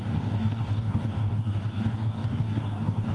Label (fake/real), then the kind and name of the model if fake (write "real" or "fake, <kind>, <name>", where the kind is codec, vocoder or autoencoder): fake, codec, DAC